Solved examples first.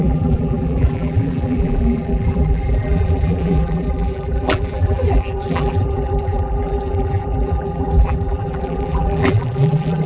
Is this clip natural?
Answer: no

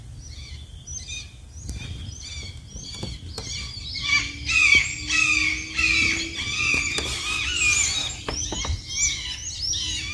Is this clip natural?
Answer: yes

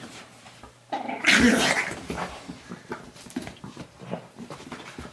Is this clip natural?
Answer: no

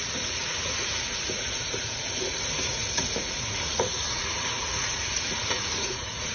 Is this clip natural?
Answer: no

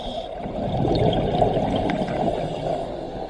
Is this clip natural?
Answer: yes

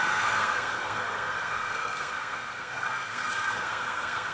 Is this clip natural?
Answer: no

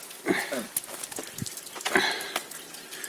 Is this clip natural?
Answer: yes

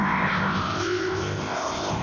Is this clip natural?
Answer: no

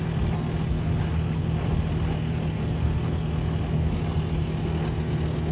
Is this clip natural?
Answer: yes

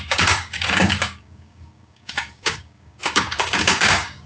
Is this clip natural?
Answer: no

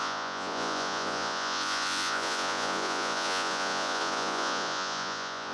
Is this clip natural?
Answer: no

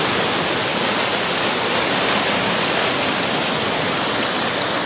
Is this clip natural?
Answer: yes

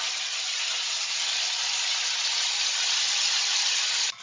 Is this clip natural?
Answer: yes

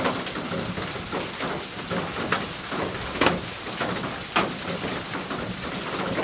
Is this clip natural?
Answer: yes